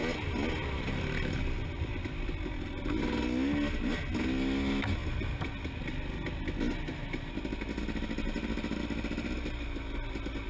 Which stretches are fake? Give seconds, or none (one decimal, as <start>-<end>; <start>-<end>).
none